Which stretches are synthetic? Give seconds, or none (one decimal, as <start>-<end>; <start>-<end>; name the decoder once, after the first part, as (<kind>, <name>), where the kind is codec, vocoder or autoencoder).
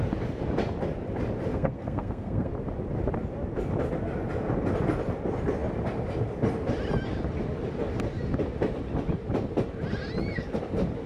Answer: 1.5-2.5 (codec, SNAC)